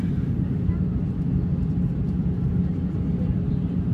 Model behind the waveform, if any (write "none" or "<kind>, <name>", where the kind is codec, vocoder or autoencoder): none